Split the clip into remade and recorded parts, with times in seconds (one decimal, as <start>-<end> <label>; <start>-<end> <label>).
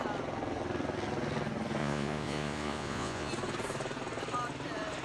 0.0-1.8 recorded; 1.8-3.3 remade; 3.3-5.0 recorded